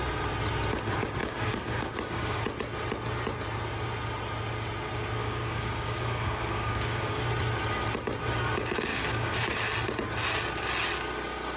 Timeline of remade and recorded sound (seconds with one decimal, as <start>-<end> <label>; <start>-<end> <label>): 0.0-1.2 recorded; 1.2-2.4 remade; 2.4-5.2 recorded; 5.2-7.2 remade; 7.2-8.9 recorded; 8.9-9.5 remade; 9.5-11.6 recorded